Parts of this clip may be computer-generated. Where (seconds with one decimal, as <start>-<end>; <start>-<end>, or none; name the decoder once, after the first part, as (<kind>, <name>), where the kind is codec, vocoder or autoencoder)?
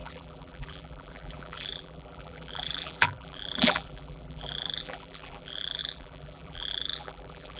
0.0-7.6 (vocoder, BigVGAN v2)